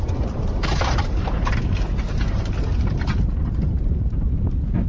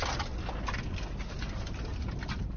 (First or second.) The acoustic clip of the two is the second